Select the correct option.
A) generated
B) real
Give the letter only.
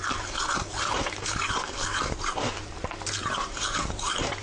A